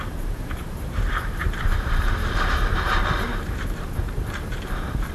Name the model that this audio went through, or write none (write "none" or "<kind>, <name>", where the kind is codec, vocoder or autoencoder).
vocoder, BigVGAN v2